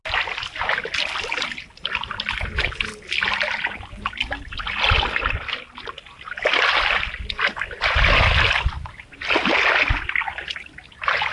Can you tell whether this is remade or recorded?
recorded